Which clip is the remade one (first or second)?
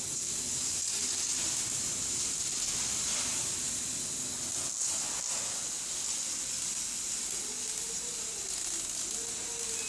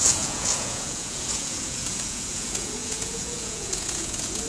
second